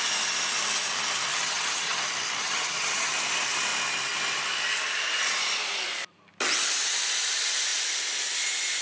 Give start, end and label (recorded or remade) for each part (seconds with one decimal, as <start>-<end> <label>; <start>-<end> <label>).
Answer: 0.0-1.3 recorded; 1.3-2.0 remade; 2.0-2.4 recorded; 2.4-3.1 remade; 3.1-8.8 recorded